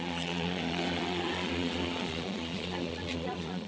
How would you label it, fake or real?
fake